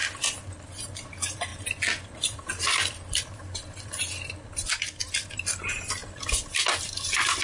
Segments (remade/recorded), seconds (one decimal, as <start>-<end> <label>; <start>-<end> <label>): 0.0-0.8 recorded; 0.8-6.0 remade; 6.0-6.8 recorded; 6.8-7.4 remade